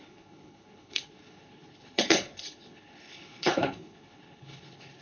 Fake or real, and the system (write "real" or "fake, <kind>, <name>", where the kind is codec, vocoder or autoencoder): fake, codec, HILCodec